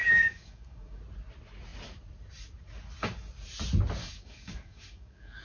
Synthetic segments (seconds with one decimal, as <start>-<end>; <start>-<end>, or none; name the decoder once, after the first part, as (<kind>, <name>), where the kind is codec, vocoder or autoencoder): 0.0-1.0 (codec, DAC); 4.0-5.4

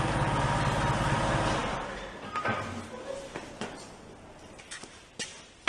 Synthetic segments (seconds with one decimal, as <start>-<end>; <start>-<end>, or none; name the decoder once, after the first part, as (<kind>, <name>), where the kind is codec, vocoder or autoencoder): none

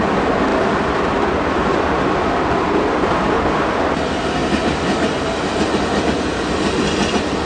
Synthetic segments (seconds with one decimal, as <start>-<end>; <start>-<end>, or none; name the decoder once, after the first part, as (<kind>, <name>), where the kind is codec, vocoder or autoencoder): 0.5-3.4 (vocoder, BigVGAN v2); 4.4-6.0